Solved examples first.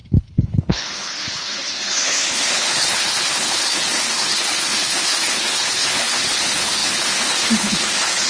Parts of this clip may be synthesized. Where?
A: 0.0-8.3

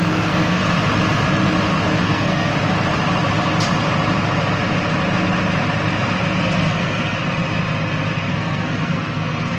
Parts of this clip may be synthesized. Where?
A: 0.0-0.6; 2.0-2.5; 6.4-7.2; 8.3-9.6

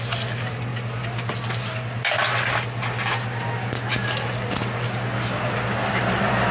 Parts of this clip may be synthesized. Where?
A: none

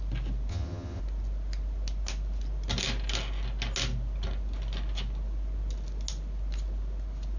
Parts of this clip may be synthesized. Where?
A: 0.5-1.0

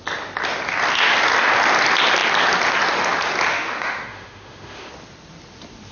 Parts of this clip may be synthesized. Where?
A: 3.5-4.9

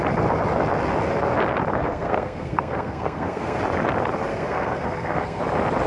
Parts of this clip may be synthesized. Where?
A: 1.7-3.6; 4.3-5.4

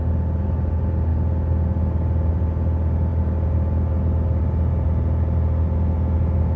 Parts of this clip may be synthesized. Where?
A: none

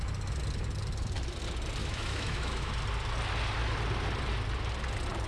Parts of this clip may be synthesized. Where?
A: 1.8-2.7